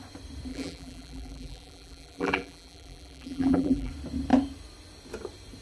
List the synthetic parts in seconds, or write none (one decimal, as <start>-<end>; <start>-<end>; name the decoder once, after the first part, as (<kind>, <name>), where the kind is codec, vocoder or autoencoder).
0.5-3.9 (vocoder, BigVGAN v2)